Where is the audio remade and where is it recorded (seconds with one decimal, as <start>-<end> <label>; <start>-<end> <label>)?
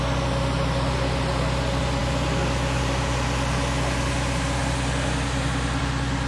0.0-6.3 recorded